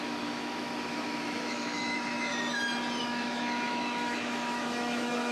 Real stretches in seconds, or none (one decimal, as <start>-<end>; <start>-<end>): 2.3-3.0